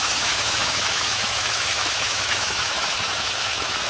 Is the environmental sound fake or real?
fake